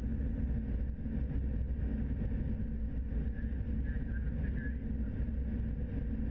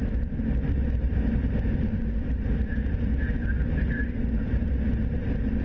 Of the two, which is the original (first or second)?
first